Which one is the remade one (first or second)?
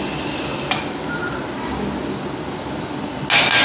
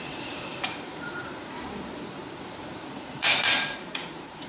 second